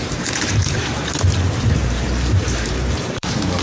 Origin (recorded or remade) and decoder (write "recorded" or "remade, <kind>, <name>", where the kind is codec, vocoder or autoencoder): remade, vocoder, BigVGAN v2